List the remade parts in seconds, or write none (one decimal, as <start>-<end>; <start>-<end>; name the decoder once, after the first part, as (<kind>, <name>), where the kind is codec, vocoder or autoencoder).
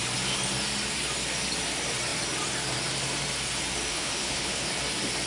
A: 3.9-4.7 (codec, HILCodec)